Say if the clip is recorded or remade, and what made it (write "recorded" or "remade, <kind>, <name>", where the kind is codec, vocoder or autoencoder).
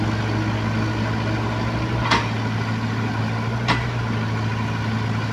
recorded